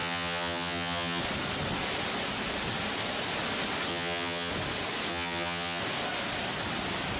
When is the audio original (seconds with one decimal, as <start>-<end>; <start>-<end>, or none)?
1.2-3.9; 4.5-5.1; 5.8-7.2